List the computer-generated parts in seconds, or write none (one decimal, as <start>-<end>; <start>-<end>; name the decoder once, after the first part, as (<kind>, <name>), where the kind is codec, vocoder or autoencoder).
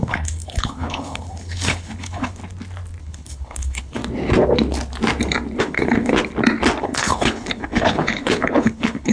0.0-2.4 (codec, HILCodec); 3.0-4.0; 5.6-6.1; 6.8-9.1